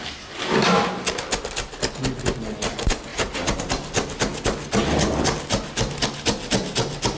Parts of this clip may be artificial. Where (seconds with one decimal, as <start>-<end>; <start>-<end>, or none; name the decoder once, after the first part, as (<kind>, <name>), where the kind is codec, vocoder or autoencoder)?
3.1-3.7 (vocoder, BigVGAN v2)